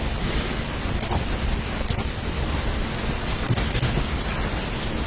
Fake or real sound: real